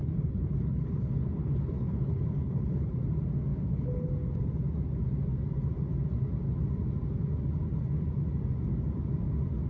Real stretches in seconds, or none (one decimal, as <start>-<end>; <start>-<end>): 2.9-3.5; 4.1-9.7